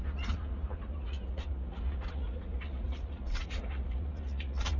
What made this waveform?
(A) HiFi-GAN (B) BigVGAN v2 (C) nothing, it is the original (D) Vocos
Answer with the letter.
D